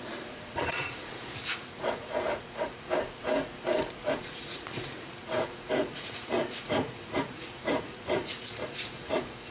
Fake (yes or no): yes